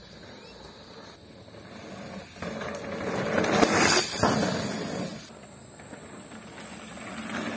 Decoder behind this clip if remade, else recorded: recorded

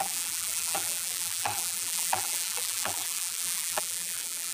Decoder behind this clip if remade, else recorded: remade, vocoder, BigVGAN v2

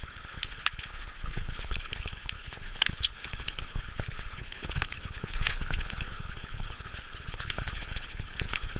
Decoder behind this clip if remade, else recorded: remade, codec, HILCodec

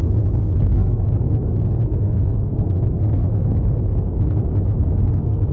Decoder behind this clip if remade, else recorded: remade, codec, SNAC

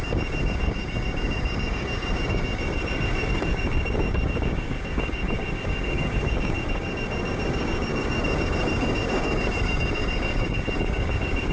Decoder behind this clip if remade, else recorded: remade, codec, DAC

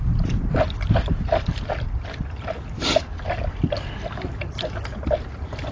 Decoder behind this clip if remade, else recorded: recorded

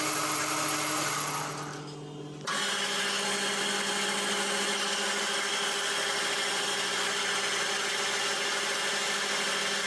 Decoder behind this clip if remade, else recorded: recorded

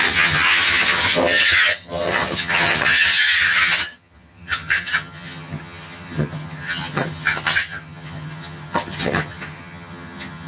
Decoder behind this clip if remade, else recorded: remade, vocoder, HiFi-GAN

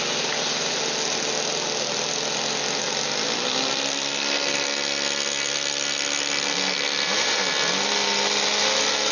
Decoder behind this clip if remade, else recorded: recorded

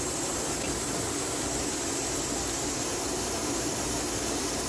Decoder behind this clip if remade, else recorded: remade, vocoder, BigVGAN v2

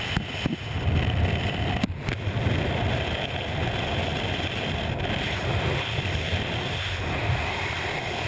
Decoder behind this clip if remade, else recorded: recorded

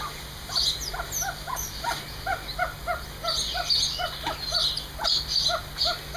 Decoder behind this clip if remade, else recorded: recorded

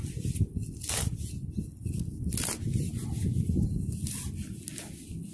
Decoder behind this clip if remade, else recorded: recorded